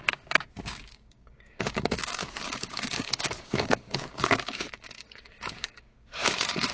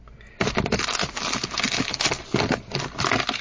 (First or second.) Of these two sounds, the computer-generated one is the first